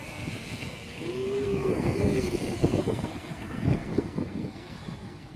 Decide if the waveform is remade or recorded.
remade